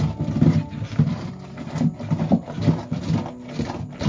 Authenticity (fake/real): real